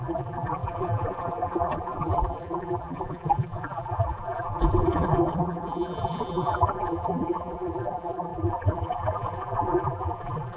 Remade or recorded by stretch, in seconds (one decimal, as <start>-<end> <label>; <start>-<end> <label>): 0.0-10.6 remade

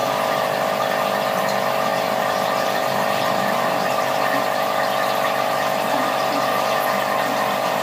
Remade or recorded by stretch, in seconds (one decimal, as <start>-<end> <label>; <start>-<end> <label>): 0.0-1.4 remade; 1.4-1.9 recorded; 1.9-2.6 remade; 2.6-7.8 recorded

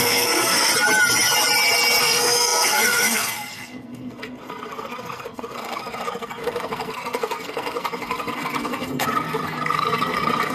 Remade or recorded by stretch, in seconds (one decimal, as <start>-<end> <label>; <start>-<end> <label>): 0.0-0.7 remade; 0.7-2.0 recorded; 2.0-10.5 remade

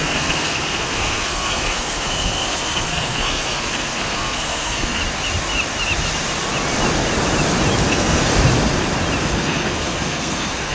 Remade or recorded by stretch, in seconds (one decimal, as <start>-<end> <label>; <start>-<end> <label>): 0.0-5.0 remade; 5.0-7.9 recorded; 7.9-8.3 remade; 8.3-9.2 recorded; 9.2-10.7 remade

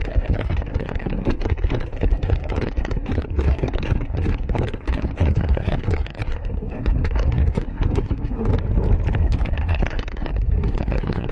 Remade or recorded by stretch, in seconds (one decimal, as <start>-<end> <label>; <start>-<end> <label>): 0.0-8.5 remade; 8.5-9.2 recorded; 9.2-11.3 remade

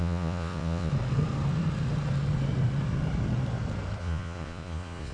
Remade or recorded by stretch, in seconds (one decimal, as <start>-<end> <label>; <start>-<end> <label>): 0.0-0.9 remade; 0.9-4.0 recorded; 4.0-5.1 remade